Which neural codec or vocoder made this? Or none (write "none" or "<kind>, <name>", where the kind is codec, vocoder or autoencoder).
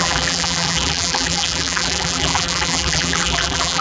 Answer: vocoder, BigVGAN v2